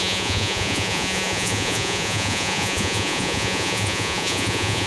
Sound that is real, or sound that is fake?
fake